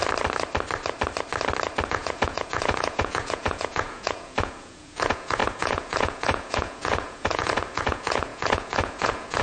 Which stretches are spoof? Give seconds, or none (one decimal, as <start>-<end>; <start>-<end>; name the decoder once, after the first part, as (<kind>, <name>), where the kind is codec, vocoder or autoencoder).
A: 1.9-9.4 (vocoder, Vocos)